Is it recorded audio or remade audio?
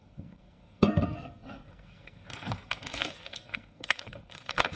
remade